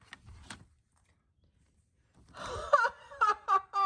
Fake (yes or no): yes